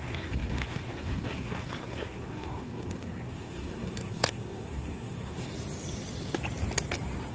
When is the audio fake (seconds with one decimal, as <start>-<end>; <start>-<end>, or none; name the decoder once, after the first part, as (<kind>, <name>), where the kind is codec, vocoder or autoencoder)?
0.0-5.5 (codec, SNAC)